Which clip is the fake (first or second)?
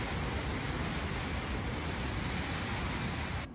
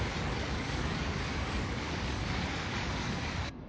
second